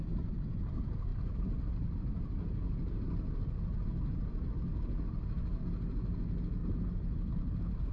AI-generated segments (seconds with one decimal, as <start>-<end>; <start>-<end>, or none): none

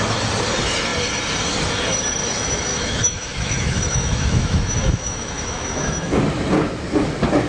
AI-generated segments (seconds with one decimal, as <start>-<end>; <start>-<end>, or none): 2.7-6.1

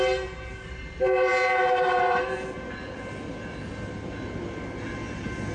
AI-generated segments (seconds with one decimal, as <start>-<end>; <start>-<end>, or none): none

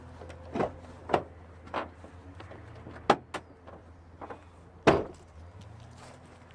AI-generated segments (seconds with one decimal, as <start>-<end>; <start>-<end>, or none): none

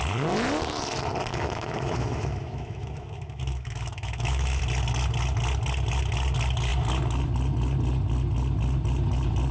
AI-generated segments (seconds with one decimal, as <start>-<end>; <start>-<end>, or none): 1.3-4.6

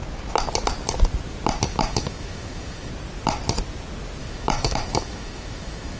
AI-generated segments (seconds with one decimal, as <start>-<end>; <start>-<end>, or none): 1.7-2.9; 4.2-6.0